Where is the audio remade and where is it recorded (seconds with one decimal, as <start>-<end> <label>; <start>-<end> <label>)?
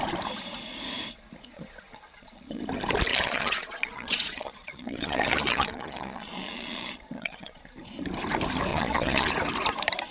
0.0-1.5 recorded; 1.5-2.6 remade; 2.6-3.1 recorded; 3.1-7.6 remade; 7.6-8.7 recorded; 8.7-9.3 remade; 9.3-10.1 recorded